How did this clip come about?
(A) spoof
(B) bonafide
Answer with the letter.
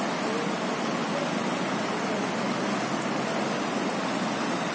B